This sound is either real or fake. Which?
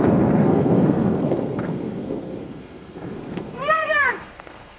fake